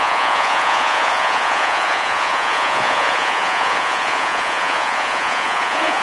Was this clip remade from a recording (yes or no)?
yes